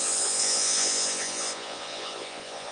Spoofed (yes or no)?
yes